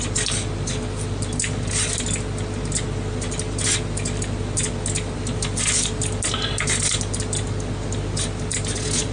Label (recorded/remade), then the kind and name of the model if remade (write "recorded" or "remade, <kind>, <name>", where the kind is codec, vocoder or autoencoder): recorded